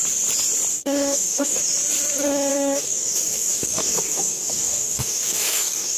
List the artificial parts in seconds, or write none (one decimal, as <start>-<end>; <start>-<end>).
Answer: 0.7-1.6; 2.5-6.0